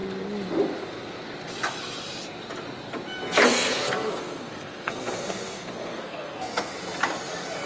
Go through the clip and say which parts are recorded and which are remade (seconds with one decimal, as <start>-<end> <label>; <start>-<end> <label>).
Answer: 0.0-3.5 recorded; 3.5-6.7 remade; 6.7-7.7 recorded